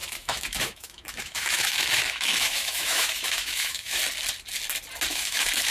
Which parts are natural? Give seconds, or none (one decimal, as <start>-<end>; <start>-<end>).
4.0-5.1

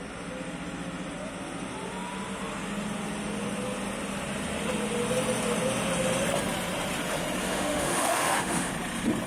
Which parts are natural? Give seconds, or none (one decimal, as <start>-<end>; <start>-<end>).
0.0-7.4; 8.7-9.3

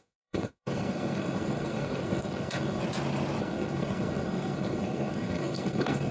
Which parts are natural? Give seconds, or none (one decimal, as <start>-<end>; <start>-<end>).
2.8-3.4